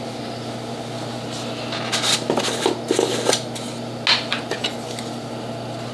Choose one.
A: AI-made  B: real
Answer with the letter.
B